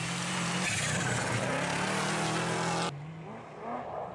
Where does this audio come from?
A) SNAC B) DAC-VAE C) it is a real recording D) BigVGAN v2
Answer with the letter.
C